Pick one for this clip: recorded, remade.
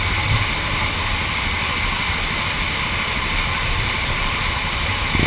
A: recorded